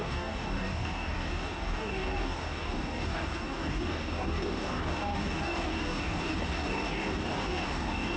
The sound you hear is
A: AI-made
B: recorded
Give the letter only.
A